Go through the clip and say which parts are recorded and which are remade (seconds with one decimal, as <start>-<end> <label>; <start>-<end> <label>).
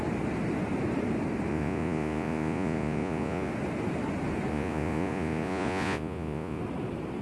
0.0-1.5 recorded; 1.5-3.5 remade; 3.5-4.5 recorded; 4.5-6.6 remade; 6.6-7.2 recorded